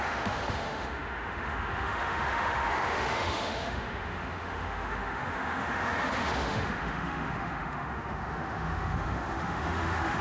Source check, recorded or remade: remade